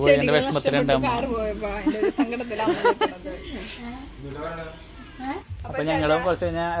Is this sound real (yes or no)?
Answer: yes